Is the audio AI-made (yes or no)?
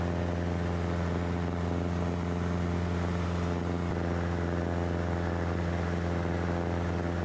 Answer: no